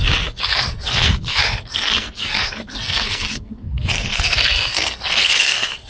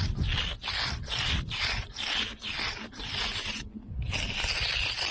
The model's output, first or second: first